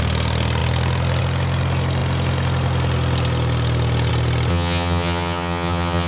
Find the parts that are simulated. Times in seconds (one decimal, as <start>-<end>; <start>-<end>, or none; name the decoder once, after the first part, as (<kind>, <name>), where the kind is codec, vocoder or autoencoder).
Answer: 4.5-6.1 (vocoder, HiFi-GAN)